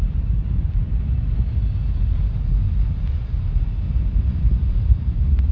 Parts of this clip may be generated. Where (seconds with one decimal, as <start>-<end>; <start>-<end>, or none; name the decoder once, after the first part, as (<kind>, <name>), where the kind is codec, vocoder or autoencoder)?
0.0-0.9 (vocoder, BigVGAN v2); 4.2-5.5